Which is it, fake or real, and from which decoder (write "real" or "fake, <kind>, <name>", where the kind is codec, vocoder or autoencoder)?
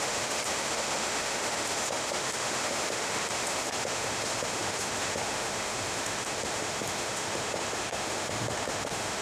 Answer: fake, autoencoder, DAC-VAE